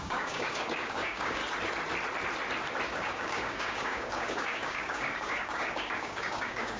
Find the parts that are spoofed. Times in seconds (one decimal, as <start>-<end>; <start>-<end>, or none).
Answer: 0.0-1.4; 2.9-6.8